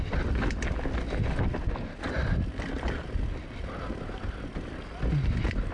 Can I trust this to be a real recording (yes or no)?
yes